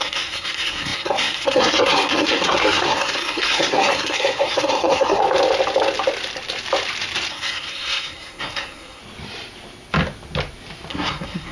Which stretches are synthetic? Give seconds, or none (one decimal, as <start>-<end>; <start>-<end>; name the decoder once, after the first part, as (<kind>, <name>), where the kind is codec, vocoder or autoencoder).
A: 0.0-5.2 (codec, SNAC); 7.3-9.0; 10.9-11.5